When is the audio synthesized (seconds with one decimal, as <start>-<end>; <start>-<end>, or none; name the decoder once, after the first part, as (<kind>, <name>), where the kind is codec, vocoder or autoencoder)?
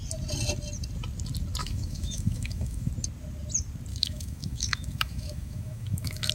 1.6-2.9 (autoencoder, DAC-VAE); 3.9-6.3